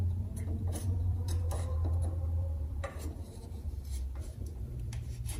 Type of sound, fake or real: fake